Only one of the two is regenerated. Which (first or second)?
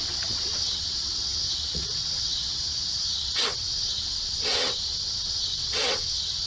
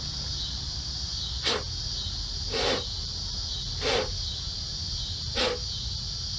first